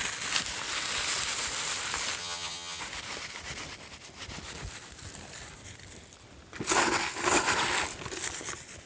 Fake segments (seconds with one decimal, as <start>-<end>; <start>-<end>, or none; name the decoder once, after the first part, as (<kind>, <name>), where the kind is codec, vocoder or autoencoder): 2.2-2.8 (vocoder, HiFi-GAN)